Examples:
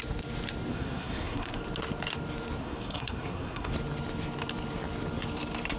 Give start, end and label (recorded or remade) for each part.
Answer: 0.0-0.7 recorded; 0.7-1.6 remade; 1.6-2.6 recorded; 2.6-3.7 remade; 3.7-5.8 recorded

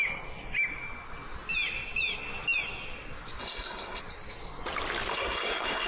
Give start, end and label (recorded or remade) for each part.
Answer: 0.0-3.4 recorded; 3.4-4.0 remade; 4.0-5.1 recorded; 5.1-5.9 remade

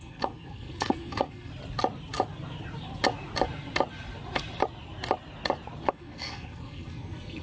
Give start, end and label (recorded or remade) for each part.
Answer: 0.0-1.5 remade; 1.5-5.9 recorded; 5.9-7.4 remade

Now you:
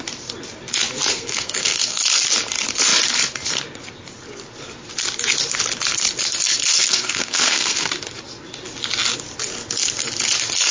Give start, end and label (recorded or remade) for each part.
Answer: 0.0-1.1 recorded; 1.1-2.0 remade; 2.0-6.7 recorded; 6.7-7.9 remade; 7.9-10.7 recorded